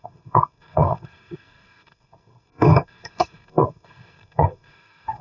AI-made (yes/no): yes